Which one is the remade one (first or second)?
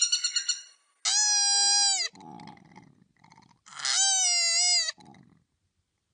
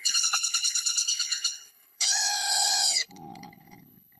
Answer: second